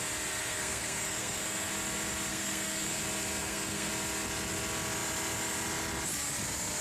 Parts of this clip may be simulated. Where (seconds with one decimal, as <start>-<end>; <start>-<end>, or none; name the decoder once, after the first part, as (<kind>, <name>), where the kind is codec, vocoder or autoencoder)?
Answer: 0.4-1.7 (codec, SNAC); 2.3-3.0; 3.4-3.9